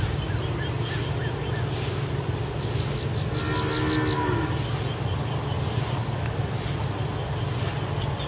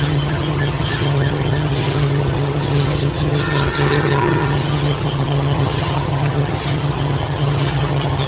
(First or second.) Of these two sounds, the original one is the first